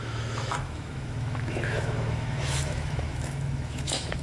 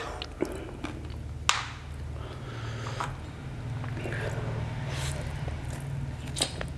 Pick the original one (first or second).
second